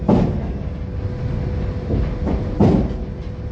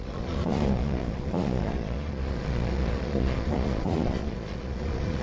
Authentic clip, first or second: first